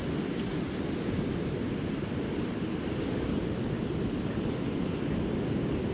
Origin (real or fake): real